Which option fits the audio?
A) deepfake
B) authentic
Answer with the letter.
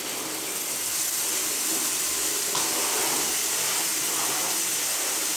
B